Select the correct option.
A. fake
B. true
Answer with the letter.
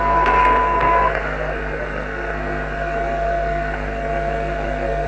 A